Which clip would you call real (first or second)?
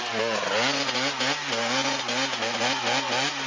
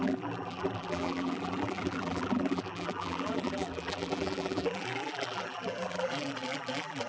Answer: first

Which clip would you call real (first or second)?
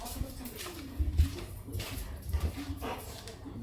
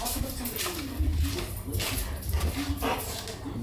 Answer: second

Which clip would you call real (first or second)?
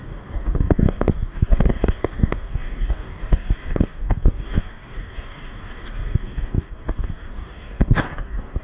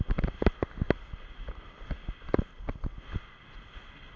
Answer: second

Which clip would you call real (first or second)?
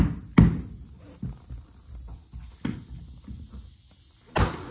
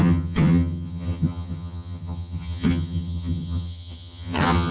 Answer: first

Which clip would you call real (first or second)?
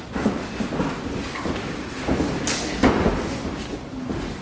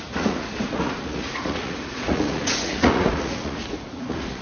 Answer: first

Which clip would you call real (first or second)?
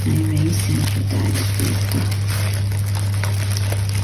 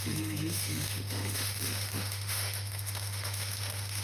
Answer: first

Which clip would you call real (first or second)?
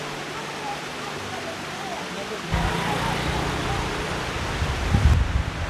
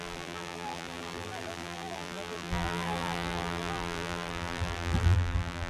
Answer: first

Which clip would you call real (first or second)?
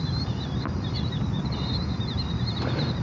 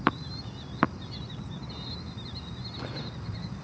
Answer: second